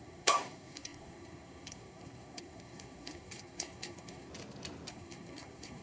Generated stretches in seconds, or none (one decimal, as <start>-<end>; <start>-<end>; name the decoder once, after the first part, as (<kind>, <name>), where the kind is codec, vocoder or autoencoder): 0.0-4.3 (codec, SNAC); 4.9-5.8

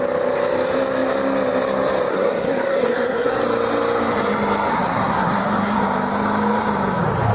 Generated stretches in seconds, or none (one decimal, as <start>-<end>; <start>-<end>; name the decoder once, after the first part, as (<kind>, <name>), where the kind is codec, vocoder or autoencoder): 2.1-3.3 (codec, SNAC); 4.7-5.8

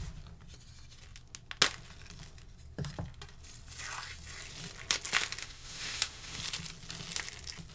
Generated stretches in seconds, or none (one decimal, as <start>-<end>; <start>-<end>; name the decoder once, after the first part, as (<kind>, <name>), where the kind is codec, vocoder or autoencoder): 5.4-6.4 (autoencoder, DAC-VAE)